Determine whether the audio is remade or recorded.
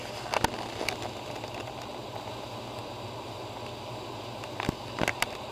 recorded